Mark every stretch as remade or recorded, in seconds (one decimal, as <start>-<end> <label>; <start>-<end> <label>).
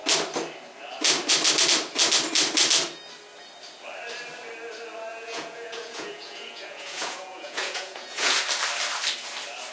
0.0-5.1 recorded; 5.1-8.4 remade; 8.4-9.7 recorded